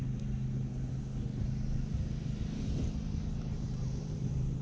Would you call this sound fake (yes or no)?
no